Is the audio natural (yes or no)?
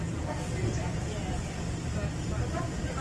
yes